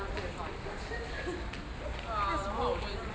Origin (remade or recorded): recorded